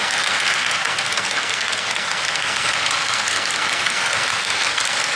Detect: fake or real fake